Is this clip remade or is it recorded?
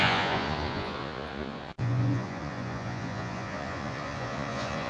remade